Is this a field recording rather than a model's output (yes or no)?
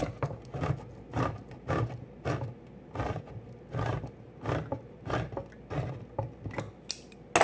yes